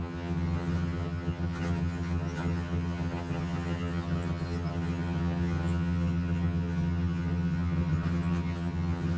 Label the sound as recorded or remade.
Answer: remade